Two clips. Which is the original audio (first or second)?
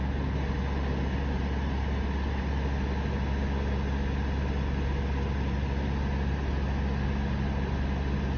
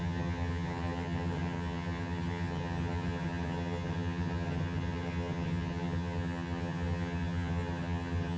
first